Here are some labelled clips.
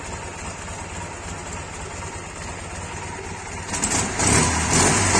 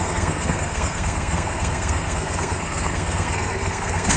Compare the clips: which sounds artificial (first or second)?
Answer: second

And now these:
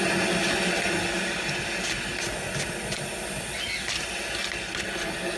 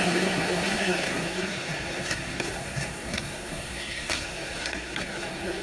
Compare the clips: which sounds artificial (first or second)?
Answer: second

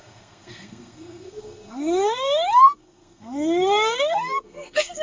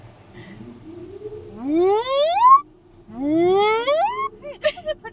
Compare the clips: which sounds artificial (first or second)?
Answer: first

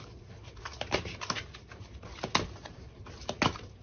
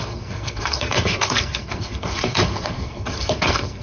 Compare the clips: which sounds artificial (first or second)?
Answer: second